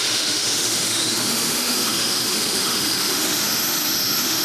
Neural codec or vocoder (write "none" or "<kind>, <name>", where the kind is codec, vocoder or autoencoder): autoencoder, DAC-VAE